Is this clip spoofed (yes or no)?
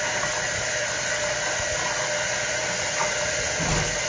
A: no